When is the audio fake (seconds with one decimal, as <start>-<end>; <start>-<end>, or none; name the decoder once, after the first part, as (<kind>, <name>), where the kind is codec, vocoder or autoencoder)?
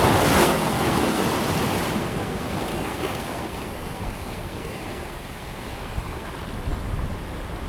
0.4-1.2 (codec, SNAC); 2.0-6.3